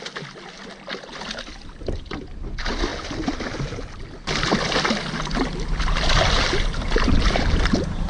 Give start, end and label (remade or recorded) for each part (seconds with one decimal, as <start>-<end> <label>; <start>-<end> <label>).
0.0-8.1 recorded